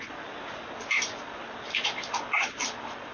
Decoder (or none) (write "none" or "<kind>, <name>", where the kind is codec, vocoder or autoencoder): none